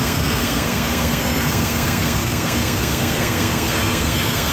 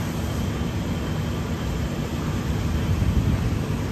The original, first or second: second